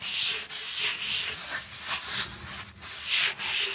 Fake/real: real